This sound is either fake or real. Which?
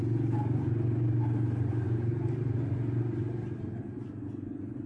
real